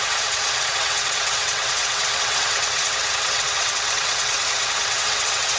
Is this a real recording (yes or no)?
no